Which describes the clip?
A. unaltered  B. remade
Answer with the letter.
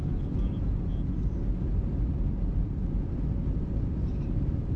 A